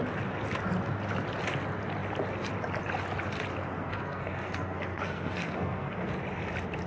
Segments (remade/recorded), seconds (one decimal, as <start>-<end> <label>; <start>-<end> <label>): 0.0-3.6 recorded; 3.6-6.1 remade; 6.1-6.9 recorded